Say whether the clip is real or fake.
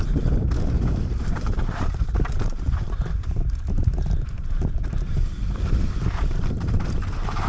fake